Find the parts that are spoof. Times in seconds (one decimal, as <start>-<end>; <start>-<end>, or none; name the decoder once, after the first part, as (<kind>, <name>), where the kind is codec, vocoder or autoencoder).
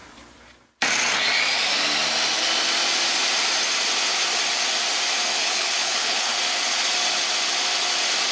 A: 5.4-6.4 (codec, HILCodec)